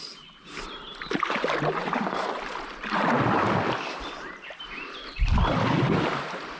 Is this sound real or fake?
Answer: real